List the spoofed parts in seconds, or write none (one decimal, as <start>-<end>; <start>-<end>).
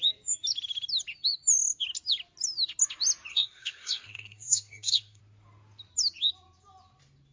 3.3-5.2